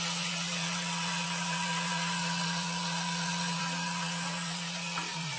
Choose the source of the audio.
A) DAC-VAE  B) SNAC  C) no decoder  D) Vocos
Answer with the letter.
D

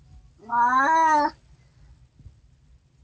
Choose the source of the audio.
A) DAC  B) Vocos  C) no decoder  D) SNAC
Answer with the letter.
C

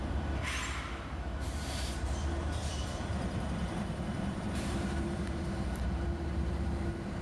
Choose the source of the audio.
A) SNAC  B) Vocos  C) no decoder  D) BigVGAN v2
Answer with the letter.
D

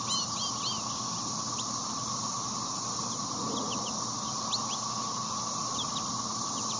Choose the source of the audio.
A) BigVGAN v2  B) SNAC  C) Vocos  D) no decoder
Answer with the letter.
D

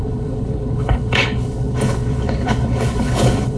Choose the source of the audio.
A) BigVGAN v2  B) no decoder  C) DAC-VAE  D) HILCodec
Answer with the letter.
D